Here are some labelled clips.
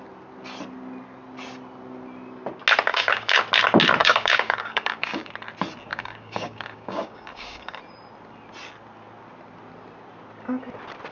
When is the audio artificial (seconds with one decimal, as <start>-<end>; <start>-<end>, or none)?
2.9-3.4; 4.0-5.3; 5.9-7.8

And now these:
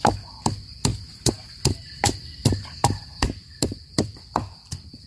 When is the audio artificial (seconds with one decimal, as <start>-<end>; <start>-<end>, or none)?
0.0-0.9; 3.2-5.1

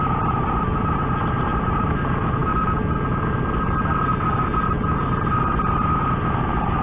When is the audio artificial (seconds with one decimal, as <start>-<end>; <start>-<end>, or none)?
none

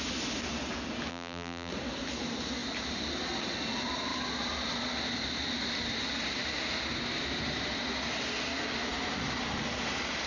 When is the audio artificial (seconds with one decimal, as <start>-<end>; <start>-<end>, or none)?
1.1-1.7

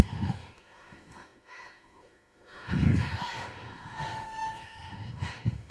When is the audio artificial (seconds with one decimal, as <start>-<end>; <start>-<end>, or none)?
0.0-5.7

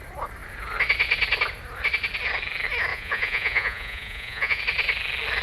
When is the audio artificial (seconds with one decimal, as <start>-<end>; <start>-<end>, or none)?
2.9-4.6

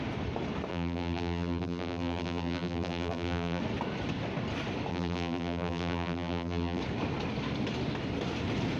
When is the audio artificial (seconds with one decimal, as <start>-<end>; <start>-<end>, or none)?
0.7-3.6; 4.9-6.8

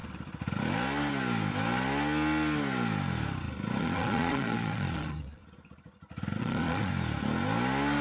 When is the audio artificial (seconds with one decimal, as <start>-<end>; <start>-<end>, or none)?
3.8-5.4; 6.4-6.9